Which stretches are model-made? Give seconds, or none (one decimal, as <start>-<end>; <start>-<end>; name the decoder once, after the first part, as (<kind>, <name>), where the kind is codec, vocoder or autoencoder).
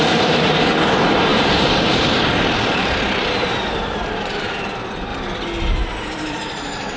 0.0-5.1 (vocoder, BigVGAN v2); 5.7-7.0